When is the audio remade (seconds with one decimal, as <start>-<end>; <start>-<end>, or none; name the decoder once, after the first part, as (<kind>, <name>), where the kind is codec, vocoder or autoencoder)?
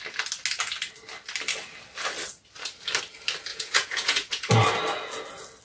3.5-4.5 (vocoder, Vocos)